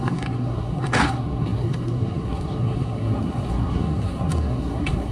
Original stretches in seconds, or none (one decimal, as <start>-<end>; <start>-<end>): none